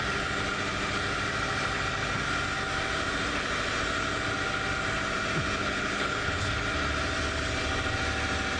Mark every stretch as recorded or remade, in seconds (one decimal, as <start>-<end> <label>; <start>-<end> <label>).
0.0-5.6 recorded; 5.6-6.5 remade; 6.5-8.6 recorded